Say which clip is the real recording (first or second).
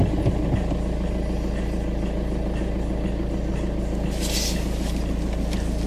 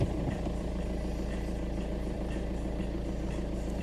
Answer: first